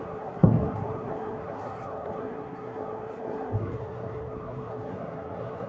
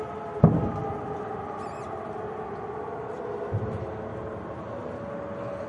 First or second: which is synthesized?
first